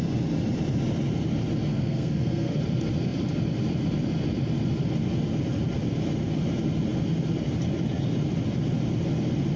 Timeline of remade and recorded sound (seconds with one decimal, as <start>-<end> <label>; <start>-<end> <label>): 0.0-1.7 recorded; 1.7-2.6 remade; 2.6-9.6 recorded